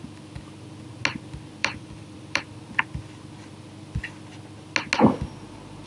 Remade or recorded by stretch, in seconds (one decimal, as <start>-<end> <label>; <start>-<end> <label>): 0.0-1.6 recorded; 1.6-2.4 remade; 2.4-5.9 recorded

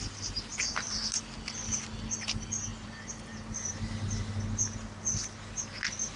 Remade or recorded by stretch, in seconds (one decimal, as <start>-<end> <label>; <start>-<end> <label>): 0.0-0.5 recorded; 0.5-1.0 remade; 1.0-2.7 recorded; 2.7-3.9 remade; 3.9-6.2 recorded

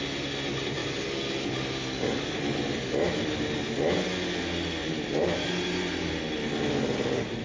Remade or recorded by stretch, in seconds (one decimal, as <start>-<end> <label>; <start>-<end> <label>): 0.0-4.8 recorded; 4.8-6.2 remade; 6.2-7.4 recorded

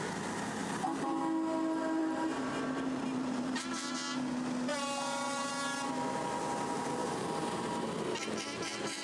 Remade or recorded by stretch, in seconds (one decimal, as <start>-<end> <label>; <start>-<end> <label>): 0.0-0.6 recorded; 0.6-1.2 remade; 1.2-2.0 recorded; 2.0-3.6 remade; 3.6-4.7 recorded; 4.7-5.5 remade; 5.5-7.0 recorded; 7.0-7.7 remade; 7.7-9.0 recorded

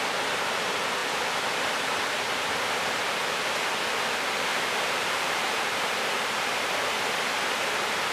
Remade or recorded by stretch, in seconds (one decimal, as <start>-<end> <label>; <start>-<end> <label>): 0.0-4.5 recorded; 4.5-6.7 remade; 6.7-8.1 recorded

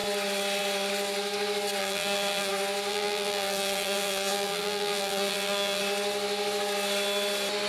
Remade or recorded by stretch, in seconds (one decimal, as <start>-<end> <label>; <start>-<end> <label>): 0.0-1.8 recorded; 1.8-2.5 remade; 2.5-2.9 recorded; 2.9-5.8 remade; 5.8-7.7 recorded

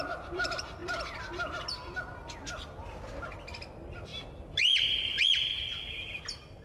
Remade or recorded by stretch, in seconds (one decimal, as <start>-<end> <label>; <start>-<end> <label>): 0.0-4.1 recorded; 4.1-5.2 remade; 5.2-6.6 recorded